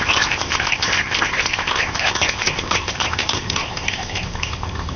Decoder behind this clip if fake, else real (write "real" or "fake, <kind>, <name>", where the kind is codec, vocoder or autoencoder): fake, codec, ZipCodec